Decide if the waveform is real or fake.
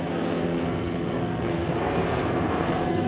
fake